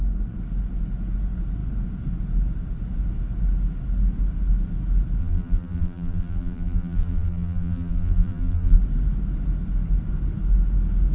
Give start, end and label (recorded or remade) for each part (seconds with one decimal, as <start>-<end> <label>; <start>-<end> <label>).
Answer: 0.0-5.2 recorded; 5.2-8.8 remade; 8.8-11.1 recorded